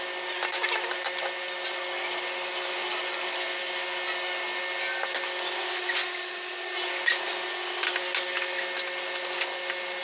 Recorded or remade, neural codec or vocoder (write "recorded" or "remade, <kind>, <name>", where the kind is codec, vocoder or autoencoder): recorded